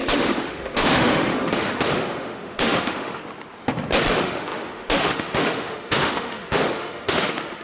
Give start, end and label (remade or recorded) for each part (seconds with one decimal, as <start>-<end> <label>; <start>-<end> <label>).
0.0-3.2 remade; 3.2-4.1 recorded; 4.1-7.6 remade

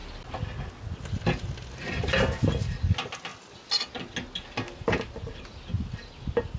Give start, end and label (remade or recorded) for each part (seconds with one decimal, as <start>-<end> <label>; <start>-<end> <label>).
0.0-6.6 recorded